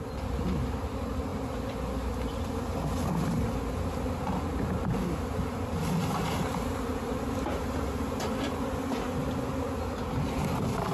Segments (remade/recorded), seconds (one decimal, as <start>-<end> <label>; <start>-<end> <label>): 0.0-10.9 recorded

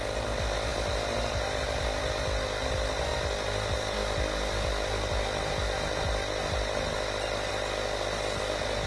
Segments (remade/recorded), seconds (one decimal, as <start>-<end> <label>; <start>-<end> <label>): 0.0-8.9 recorded

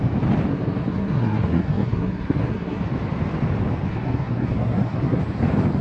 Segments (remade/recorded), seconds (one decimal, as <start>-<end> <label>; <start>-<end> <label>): 0.0-0.5 recorded; 0.5-2.8 remade; 2.8-3.9 recorded; 3.9-5.2 remade; 5.2-5.8 recorded

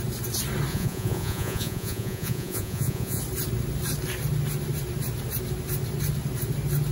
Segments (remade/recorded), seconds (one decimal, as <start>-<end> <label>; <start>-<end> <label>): 0.0-0.7 recorded; 0.7-3.2 remade; 3.2-6.9 recorded

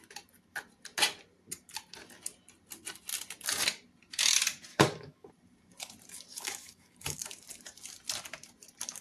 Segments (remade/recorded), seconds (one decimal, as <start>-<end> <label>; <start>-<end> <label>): 0.0-4.7 recorded; 4.7-5.3 remade; 5.3-6.3 recorded; 6.3-7.2 remade; 7.2-9.0 recorded

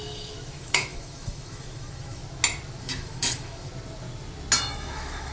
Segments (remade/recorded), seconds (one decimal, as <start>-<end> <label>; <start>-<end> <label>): 0.0-2.2 remade; 2.2-2.8 recorded; 2.8-3.7 remade; 3.7-4.6 recorded; 4.6-5.3 remade

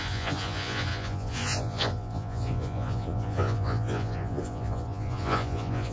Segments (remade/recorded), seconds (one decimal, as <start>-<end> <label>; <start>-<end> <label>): 0.0-5.9 remade

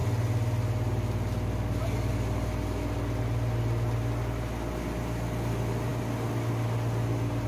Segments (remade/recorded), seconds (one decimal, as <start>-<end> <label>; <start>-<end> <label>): 0.0-7.5 recorded